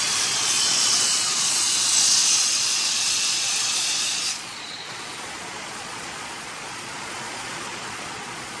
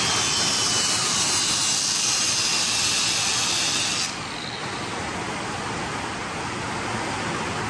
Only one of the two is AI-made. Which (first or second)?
first